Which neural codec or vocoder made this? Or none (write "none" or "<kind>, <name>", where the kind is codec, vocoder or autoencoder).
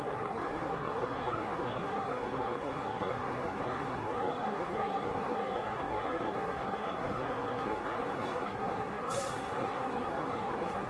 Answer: codec, SNAC